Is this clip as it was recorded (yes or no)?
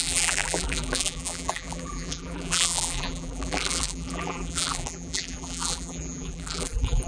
no